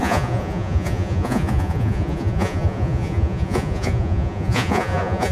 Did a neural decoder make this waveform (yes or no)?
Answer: yes